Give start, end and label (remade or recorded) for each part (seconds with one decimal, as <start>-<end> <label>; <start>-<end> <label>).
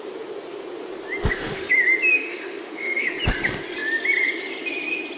0.0-1.2 recorded; 1.2-1.7 remade; 1.7-2.1 recorded; 2.1-3.1 remade; 3.1-5.2 recorded